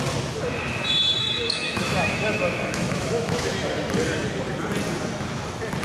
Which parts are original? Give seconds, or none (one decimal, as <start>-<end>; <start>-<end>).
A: 0.0-1.2; 3.5-5.8